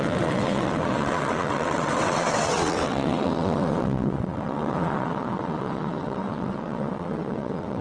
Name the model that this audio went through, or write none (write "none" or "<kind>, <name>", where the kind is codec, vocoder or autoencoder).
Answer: vocoder, WaveNeXt